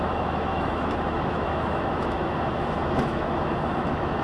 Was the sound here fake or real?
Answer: fake